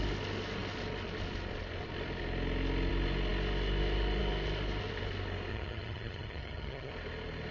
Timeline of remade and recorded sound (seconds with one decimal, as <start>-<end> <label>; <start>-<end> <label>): 0.0-5.5 recorded; 5.5-6.9 remade; 6.9-7.5 recorded